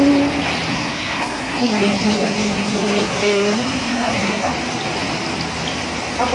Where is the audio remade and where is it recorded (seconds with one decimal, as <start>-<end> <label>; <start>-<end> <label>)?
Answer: 0.0-0.7 recorded; 0.7-4.5 remade; 4.5-6.3 recorded

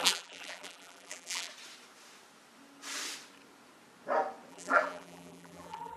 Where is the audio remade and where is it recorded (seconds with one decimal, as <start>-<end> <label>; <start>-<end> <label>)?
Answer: 0.0-1.5 remade; 1.5-4.5 recorded; 4.5-6.0 remade

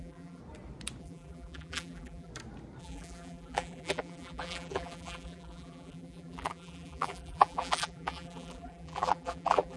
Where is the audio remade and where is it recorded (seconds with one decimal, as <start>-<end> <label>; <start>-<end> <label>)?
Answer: 0.0-0.4 remade; 0.4-1.0 recorded; 1.0-2.3 remade; 2.3-2.8 recorded; 2.8-9.8 remade

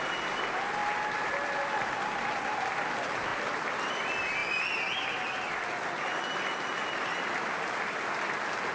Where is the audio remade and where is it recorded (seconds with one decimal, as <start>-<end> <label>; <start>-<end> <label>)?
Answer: 0.0-0.8 recorded; 0.8-2.0 remade; 2.0-8.7 recorded

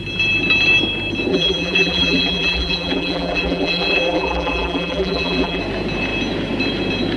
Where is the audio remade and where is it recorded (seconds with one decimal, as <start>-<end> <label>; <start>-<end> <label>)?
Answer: 0.0-1.3 recorded; 1.3-5.6 remade; 5.6-7.2 recorded

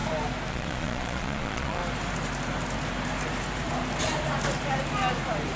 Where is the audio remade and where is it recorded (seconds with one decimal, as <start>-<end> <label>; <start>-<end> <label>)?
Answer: 0.0-0.5 recorded; 0.5-1.8 remade; 1.8-5.6 recorded

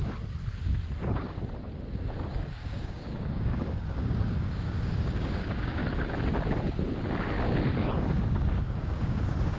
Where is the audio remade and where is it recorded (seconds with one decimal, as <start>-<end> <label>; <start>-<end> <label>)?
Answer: 0.0-2.3 recorded; 2.3-5.8 remade; 5.8-8.0 recorded; 8.0-9.6 remade